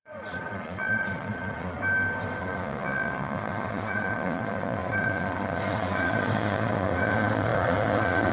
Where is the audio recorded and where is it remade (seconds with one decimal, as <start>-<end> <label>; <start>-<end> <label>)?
0.0-1.8 remade; 1.8-2.4 recorded; 2.4-8.3 remade